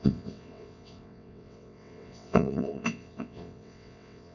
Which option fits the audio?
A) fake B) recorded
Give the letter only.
A